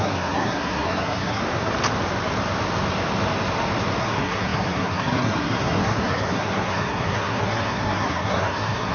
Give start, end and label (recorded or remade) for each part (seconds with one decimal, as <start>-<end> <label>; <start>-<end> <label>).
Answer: 0.0-1.4 remade; 1.4-4.0 recorded; 4.0-8.9 remade